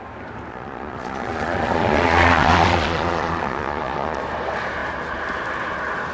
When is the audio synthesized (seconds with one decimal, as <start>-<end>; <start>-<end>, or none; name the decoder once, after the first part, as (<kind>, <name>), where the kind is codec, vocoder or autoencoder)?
0.5-4.2 (vocoder, Vocos)